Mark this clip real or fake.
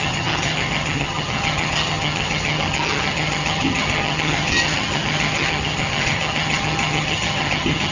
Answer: fake